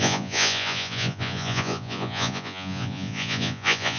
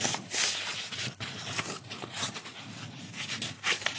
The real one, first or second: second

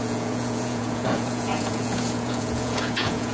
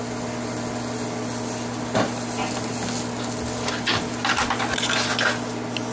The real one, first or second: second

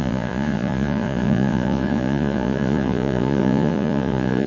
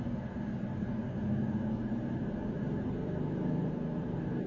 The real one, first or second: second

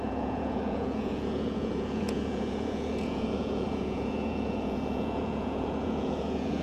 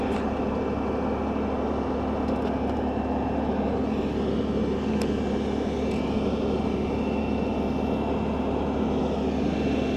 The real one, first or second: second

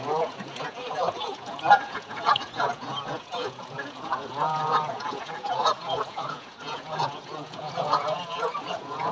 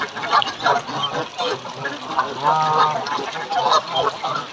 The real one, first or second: second